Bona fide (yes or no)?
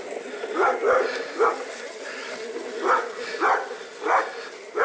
yes